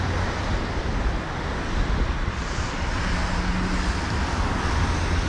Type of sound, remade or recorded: recorded